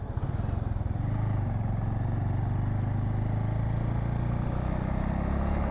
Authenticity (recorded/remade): recorded